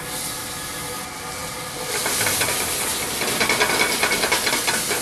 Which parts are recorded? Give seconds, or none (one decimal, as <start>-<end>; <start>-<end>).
0.0-5.0